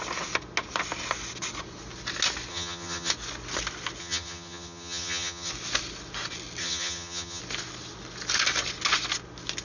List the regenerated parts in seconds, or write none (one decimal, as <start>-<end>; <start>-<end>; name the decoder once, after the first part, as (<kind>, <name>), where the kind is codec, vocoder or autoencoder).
2.5-3.1 (vocoder, HiFi-GAN); 4.0-5.5; 6.6-7.4